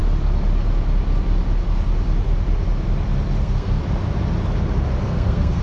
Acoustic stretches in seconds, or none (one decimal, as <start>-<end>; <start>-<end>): 0.0-3.4; 3.8-5.0

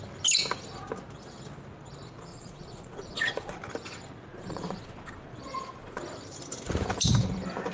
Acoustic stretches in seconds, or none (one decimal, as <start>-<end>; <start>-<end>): 0.0-2.3; 3.6-4.3; 6.0-7.7

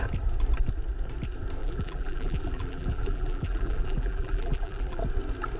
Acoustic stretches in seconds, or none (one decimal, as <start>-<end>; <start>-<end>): 0.0-1.6; 5.0-5.6

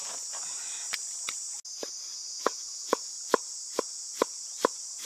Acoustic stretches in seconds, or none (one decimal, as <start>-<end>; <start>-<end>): 0.0-2.1; 3.1-5.1